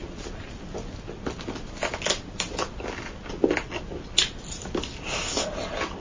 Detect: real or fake real